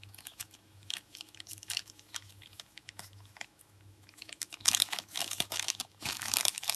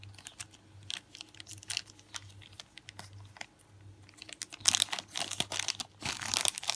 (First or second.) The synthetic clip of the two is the first